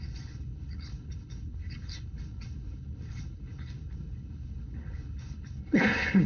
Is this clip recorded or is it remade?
remade